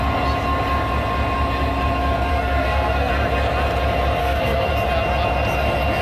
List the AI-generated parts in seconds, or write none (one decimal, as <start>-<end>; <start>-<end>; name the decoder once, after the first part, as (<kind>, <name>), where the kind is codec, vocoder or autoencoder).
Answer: 2.3-3.1 (codec, SNAC); 4.2-4.7